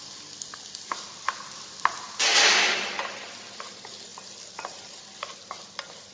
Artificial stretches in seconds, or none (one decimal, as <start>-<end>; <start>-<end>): none